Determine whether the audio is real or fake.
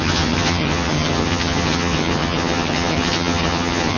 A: fake